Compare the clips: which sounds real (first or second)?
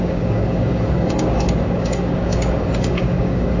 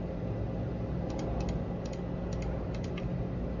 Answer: second